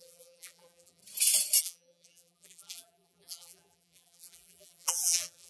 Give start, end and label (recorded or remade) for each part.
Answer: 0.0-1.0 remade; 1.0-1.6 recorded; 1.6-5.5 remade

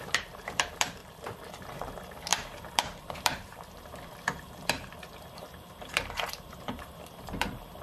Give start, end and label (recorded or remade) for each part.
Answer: 0.0-1.0 remade; 1.0-1.6 recorded; 1.6-7.8 remade

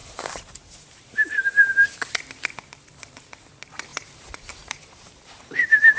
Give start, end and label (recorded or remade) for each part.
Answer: 0.0-1.9 remade; 1.9-3.9 recorded; 3.9-6.0 remade

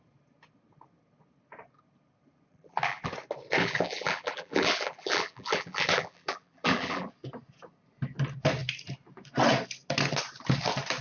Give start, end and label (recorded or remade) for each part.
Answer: 0.0-2.5 recorded; 2.5-3.1 remade; 3.1-3.6 recorded; 3.6-7.1 remade; 7.1-11.0 recorded

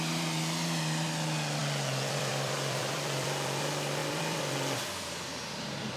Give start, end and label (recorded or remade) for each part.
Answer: 0.0-6.0 remade

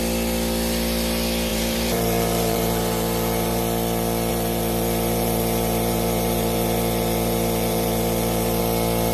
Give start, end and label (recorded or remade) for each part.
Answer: 0.0-1.5 recorded; 1.5-3.6 remade; 3.6-4.3 recorded; 4.3-8.6 remade; 8.6-9.1 recorded